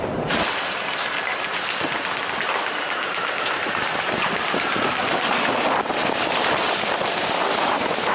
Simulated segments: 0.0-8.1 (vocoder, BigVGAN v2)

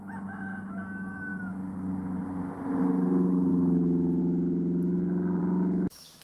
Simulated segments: 3.5-4.2 (autoencoder, DAC-VAE); 5.4-6.2

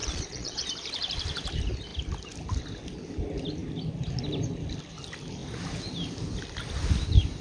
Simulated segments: 0.0-0.7 (vocoder, Vocos)